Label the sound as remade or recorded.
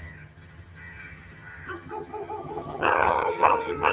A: remade